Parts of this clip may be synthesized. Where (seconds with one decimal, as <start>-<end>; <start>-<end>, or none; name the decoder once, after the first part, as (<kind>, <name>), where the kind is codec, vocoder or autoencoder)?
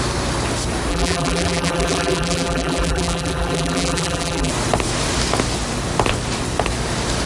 0.9-4.5 (vocoder, BigVGAN v2)